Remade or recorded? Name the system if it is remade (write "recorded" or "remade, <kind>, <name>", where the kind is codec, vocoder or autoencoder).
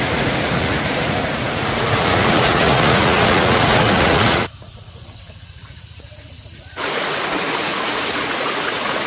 remade, vocoder, Vocos